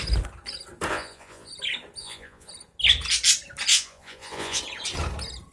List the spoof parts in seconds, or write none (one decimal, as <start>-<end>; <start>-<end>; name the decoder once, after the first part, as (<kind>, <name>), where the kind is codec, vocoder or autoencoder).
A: 0.9-1.5 (vocoder, Vocos); 2.0-2.5; 3.7-4.6